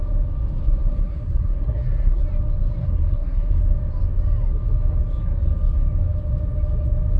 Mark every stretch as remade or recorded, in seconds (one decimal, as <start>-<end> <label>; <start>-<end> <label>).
0.0-0.8 recorded; 0.8-2.2 remade; 2.2-2.8 recorded; 2.8-3.6 remade; 3.6-7.2 recorded